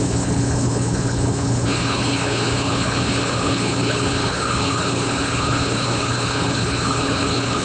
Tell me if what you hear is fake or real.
fake